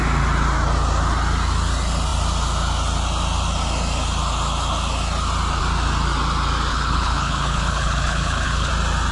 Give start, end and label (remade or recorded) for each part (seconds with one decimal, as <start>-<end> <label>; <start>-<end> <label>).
0.0-6.7 recorded; 6.7-8.7 remade; 8.7-9.1 recorded

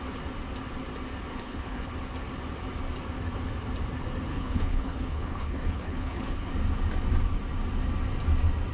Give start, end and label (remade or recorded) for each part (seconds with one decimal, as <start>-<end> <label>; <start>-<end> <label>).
0.0-1.3 recorded; 1.3-1.9 remade; 1.9-4.3 recorded; 4.3-6.5 remade; 6.5-8.7 recorded

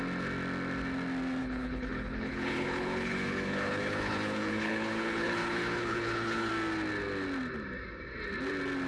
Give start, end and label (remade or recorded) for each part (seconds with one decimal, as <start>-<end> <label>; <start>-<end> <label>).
0.0-1.4 recorded; 1.4-6.5 remade; 6.5-8.9 recorded